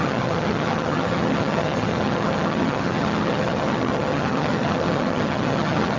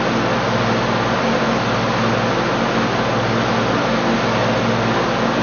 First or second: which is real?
second